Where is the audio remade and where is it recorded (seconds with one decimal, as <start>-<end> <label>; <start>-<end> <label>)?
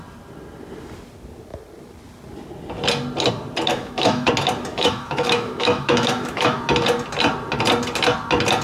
0.0-3.7 recorded; 3.7-4.3 remade; 4.3-4.7 recorded; 4.7-6.6 remade; 6.6-8.6 recorded